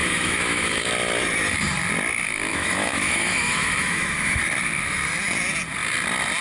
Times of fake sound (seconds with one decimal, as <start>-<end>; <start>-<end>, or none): 0.0-0.9; 2.5-4.4

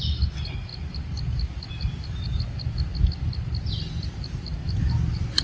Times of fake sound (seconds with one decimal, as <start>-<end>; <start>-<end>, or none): none

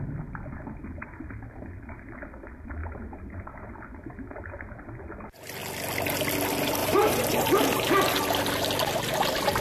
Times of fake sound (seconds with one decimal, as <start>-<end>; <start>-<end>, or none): 2.8-3.7; 6.8-7.6

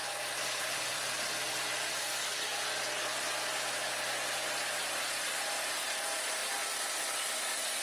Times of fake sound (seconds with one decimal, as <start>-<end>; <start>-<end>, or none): none

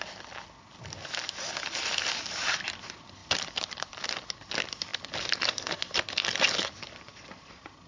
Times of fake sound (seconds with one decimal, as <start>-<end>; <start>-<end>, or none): 3.2-4.0; 4.9-5.7; 7.1-7.9

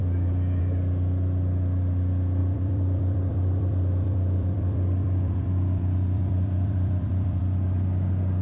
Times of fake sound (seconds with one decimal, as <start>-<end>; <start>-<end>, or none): 2.4-7.4

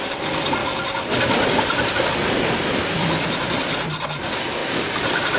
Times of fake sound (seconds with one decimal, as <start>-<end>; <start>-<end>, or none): 4.6-5.4